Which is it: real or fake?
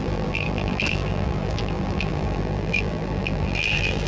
fake